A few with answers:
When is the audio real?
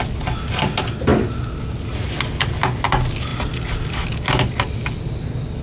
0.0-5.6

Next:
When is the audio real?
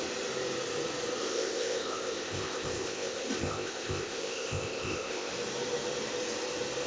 0.0-1.2; 5.3-6.9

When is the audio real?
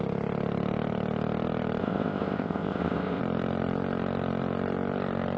0.0-1.8; 3.2-5.4